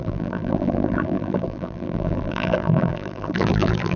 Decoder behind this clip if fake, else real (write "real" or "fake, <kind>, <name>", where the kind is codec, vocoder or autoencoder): fake, vocoder, BigVGAN v2